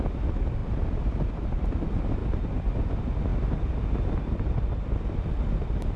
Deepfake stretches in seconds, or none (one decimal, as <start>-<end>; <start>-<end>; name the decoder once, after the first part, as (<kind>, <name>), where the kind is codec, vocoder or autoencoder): 0.6-1.7 (vocoder, BigVGAN v2); 2.2-2.9